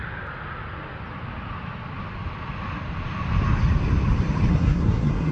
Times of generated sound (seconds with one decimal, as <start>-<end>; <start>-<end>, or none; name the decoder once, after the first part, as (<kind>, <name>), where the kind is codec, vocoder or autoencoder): 4.5-5.3 (codec, SNAC)